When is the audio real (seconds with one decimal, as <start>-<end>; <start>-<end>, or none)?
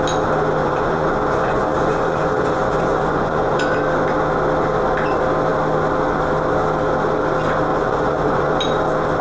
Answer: 0.0-0.6; 3.6-7.7; 8.5-9.2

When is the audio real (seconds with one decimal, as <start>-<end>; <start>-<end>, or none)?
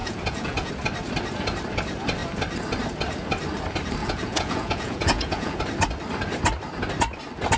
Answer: 0.7-4.0; 5.6-7.6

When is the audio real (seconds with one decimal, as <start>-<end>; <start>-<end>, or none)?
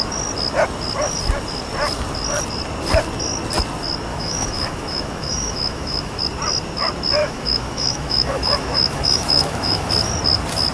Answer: 0.0-4.1; 6.2-7.2; 9.9-10.7